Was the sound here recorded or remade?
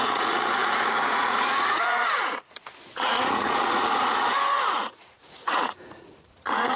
remade